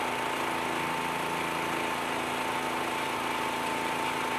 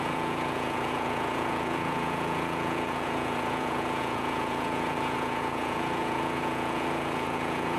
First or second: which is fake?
second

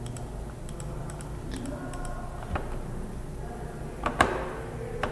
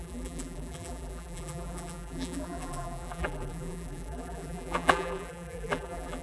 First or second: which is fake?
second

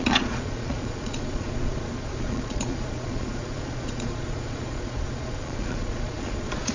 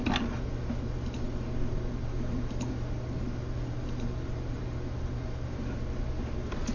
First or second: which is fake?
first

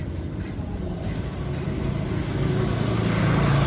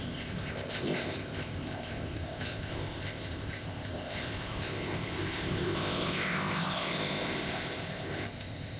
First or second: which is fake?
second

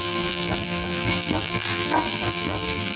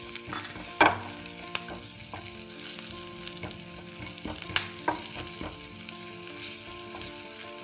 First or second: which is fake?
first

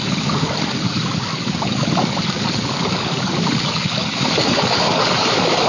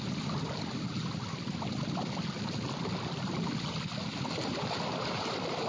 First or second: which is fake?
first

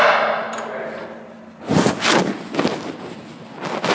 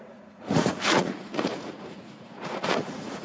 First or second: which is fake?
second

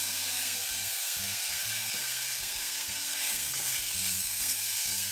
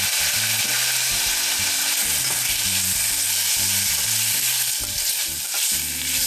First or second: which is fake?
first